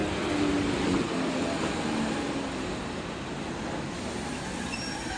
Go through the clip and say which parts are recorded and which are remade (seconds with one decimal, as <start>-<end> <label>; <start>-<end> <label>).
0.0-5.2 recorded